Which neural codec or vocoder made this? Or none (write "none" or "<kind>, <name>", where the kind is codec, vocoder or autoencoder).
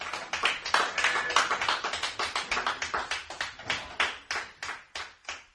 none